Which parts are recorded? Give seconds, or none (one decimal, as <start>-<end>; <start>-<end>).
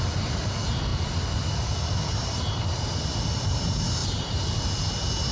0.0-4.0